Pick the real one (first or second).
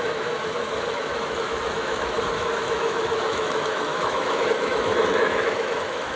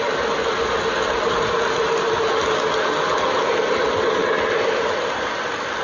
second